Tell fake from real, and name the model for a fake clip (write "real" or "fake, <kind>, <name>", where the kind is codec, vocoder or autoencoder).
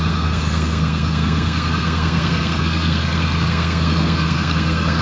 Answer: fake, codec, SNAC